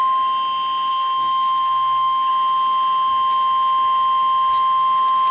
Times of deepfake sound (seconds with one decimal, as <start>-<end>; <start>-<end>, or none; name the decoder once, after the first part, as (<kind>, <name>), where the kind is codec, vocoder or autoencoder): 0.9-2.3 (codec, SNAC)